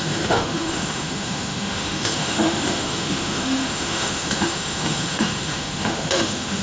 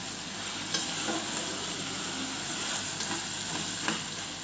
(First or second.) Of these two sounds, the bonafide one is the second